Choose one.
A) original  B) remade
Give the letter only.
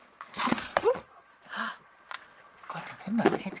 B